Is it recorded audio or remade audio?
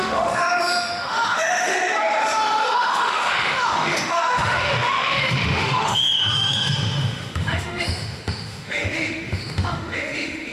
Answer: remade